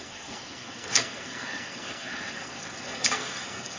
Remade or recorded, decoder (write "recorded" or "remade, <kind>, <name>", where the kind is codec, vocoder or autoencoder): remade, codec, SNAC